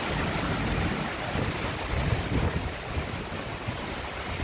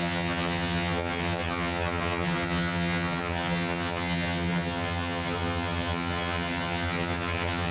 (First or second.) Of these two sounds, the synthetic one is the second